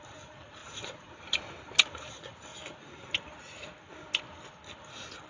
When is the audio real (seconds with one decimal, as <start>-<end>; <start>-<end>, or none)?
2.5-5.3